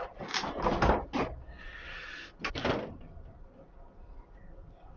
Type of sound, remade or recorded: recorded